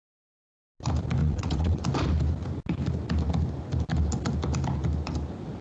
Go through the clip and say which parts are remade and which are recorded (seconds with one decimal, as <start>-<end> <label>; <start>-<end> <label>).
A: 0.0-1.2 recorded; 1.2-1.8 remade; 1.8-5.6 recorded